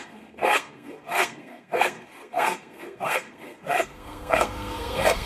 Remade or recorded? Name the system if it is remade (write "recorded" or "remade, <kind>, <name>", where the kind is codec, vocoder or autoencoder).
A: remade, codec, SNAC